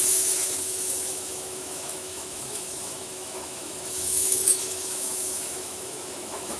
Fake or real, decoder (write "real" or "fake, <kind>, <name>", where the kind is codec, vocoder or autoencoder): fake, autoencoder, DAC-VAE